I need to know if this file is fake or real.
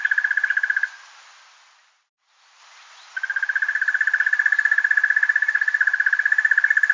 real